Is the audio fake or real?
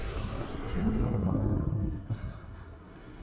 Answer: fake